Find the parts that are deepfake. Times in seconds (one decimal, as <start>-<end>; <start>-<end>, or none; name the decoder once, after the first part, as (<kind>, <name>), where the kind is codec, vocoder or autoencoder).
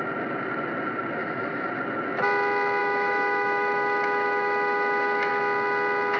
1.2-1.7 (autoencoder, DAC-VAE); 2.8-5.3